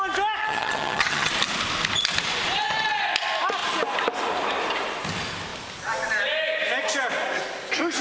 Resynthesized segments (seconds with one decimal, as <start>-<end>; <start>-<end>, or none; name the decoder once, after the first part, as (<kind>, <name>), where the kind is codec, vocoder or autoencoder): 0.4-1.3 (vocoder, HiFi-GAN)